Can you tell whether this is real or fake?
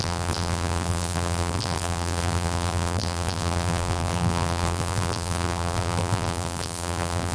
fake